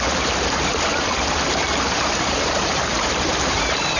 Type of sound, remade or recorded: remade